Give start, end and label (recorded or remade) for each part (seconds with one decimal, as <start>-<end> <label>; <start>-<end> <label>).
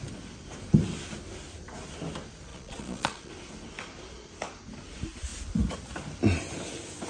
0.0-2.5 recorded; 2.5-3.3 remade; 3.3-7.1 recorded